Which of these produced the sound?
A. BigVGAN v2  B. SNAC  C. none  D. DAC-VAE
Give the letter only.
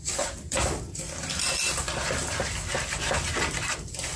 A